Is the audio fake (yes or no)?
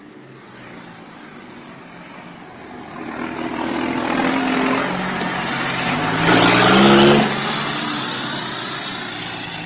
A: no